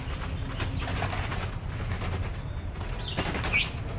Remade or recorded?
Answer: recorded